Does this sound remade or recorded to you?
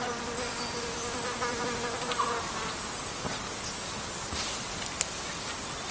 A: recorded